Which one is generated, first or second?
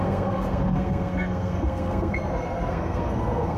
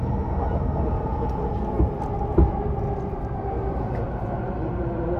first